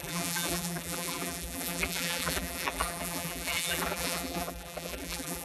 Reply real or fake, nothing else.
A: fake